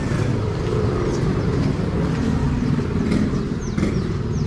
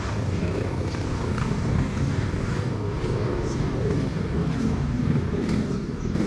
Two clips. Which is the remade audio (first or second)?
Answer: second